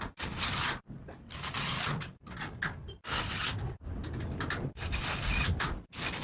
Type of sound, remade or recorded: recorded